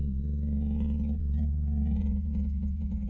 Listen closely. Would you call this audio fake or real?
fake